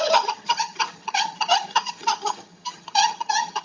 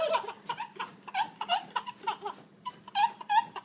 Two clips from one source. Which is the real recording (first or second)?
second